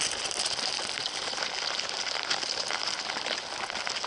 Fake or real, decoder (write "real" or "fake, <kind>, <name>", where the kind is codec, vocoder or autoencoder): real